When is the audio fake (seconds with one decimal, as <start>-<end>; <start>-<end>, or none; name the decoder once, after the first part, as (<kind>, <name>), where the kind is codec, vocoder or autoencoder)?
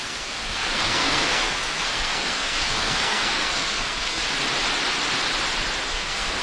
0.0-4.2 (codec, SNAC); 5.9-6.4